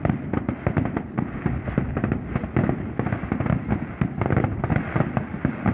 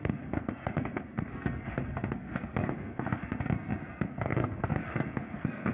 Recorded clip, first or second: first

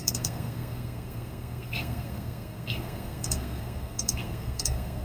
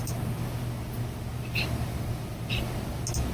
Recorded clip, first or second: second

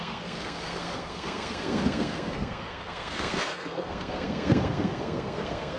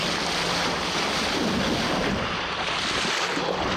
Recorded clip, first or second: second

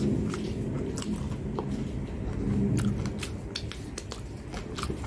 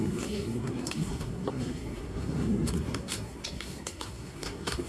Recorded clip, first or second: first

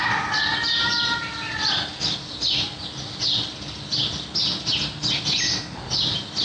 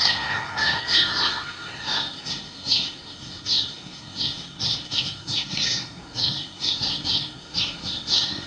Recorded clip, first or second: first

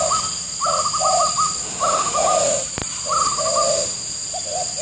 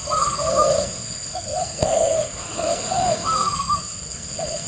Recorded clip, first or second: first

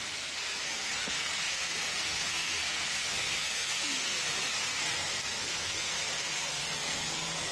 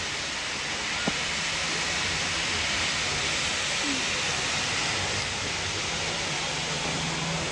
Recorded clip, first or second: second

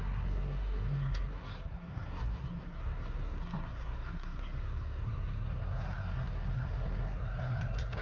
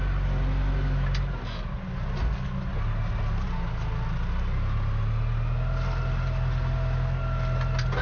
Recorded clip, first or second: second